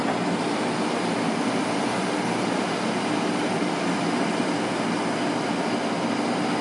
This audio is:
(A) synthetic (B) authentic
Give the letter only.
B